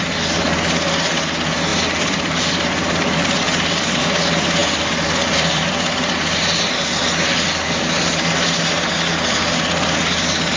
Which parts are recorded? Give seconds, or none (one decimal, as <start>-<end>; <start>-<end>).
0.0-1.7; 4.0-4.6; 6.6-10.6